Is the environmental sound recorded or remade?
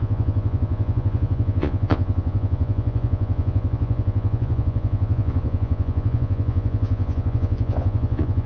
remade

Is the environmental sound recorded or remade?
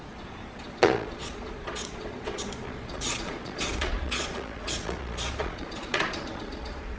remade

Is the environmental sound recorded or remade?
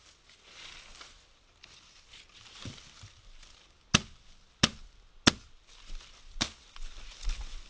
recorded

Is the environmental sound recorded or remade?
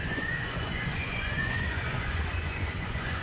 remade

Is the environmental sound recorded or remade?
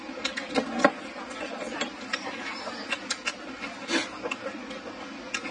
recorded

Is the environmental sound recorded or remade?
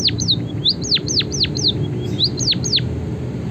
recorded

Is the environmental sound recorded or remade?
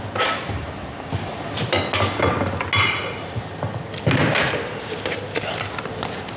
recorded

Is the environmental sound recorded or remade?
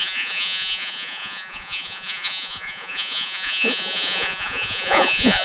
remade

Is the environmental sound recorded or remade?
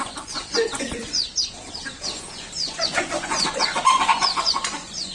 remade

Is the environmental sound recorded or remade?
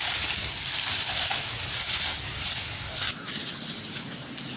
recorded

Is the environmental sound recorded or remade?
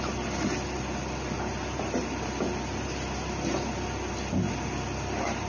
recorded